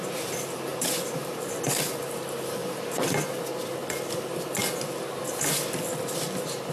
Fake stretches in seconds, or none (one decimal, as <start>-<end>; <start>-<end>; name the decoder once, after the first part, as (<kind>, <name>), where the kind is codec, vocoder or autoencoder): 0.7-1.6 (vocoder, BigVGAN v2); 2.6-3.1